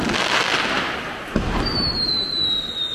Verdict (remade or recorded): recorded